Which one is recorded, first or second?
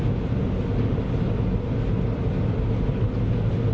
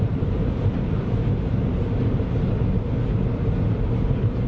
first